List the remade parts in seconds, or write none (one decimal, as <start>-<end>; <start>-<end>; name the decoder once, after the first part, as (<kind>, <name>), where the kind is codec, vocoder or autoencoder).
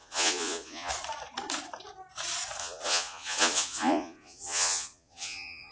0.0-0.9 (vocoder, Vocos); 2.6-5.7